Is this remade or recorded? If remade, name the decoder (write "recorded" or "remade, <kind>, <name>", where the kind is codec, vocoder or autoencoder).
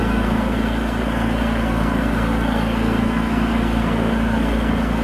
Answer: remade, codec, SNAC